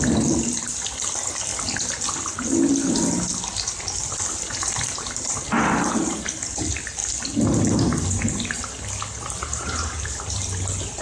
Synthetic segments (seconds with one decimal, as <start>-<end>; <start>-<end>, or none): none